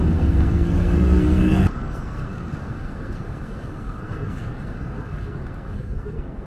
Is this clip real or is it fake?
fake